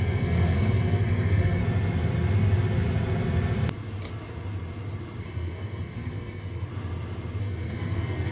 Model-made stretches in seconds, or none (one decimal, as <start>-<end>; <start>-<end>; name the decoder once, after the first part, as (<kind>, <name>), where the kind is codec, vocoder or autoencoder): 0.0-1.6 (codec, SNAC); 5.2-6.7; 7.4-8.3